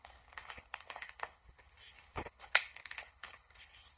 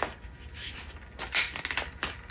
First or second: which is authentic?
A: second